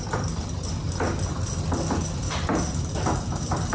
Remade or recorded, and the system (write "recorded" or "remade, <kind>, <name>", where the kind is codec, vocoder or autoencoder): recorded